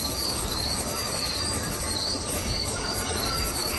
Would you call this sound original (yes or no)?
no